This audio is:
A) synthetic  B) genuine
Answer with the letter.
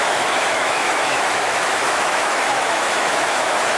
A